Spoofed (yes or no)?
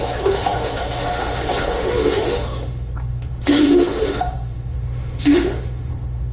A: yes